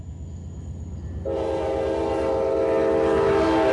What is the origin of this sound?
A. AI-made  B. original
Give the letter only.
B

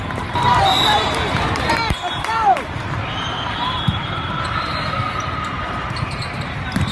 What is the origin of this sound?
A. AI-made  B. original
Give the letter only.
A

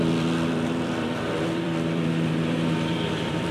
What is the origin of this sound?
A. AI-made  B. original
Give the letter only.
A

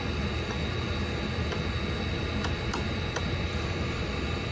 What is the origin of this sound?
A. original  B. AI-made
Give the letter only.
A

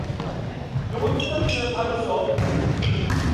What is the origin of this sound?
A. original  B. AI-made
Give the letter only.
A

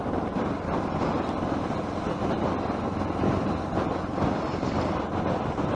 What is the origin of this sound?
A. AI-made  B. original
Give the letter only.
B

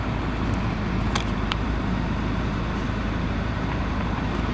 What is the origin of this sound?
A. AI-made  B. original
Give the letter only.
A